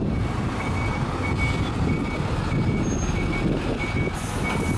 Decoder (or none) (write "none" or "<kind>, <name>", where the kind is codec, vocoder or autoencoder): none